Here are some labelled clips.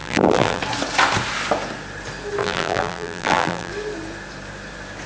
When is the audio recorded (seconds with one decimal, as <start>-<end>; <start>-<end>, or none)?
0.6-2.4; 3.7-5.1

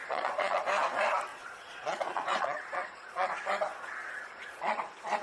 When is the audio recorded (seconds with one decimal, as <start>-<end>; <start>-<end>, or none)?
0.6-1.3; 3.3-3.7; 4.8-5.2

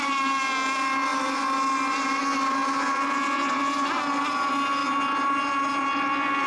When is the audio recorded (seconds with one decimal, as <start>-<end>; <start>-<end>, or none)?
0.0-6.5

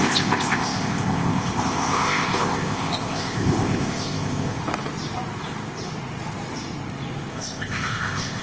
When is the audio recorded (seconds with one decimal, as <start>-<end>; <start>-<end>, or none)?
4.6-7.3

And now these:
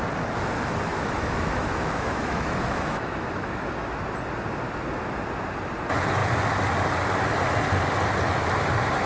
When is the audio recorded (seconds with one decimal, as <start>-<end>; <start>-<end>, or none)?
0.0-0.9; 4.0-9.1